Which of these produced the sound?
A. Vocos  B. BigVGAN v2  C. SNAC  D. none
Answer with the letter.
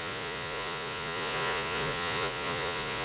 A